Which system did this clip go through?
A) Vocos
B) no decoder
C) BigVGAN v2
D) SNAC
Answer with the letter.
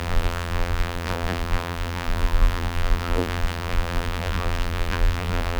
C